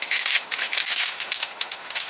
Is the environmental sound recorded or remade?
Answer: remade